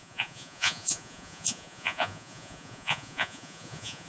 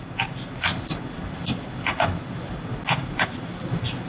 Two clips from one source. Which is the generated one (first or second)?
first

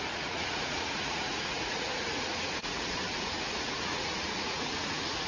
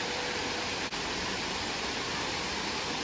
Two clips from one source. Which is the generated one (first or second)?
first